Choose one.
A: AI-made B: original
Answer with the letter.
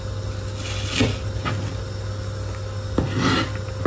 B